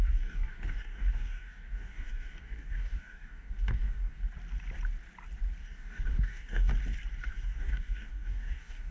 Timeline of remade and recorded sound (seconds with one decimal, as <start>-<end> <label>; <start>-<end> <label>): 0.0-4.2 remade; 4.2-5.6 recorded; 5.6-6.7 remade; 6.7-7.2 recorded; 7.2-8.9 remade